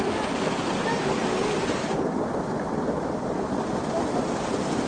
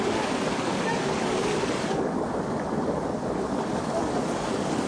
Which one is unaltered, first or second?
first